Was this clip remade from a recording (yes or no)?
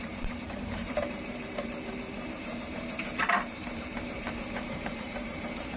yes